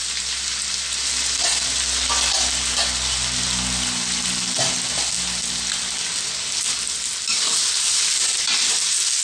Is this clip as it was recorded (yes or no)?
yes